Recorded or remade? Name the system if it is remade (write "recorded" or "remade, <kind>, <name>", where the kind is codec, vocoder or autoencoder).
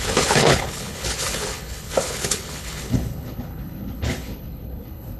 remade, codec, HILCodec